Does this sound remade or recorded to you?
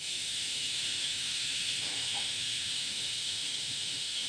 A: remade